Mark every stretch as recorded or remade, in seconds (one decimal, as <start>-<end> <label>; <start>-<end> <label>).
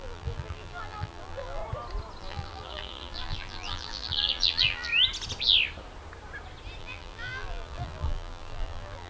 0.0-1.6 remade; 1.6-2.2 recorded; 2.2-4.9 remade; 4.9-6.8 recorded; 6.8-9.1 remade